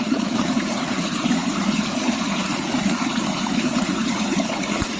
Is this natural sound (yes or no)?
no